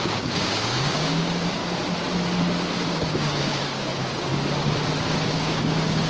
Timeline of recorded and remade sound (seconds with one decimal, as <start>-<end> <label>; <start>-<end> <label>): 0.0-1.6 remade; 1.6-2.9 recorded; 2.9-4.3 remade; 4.3-5.3 recorded; 5.3-6.1 remade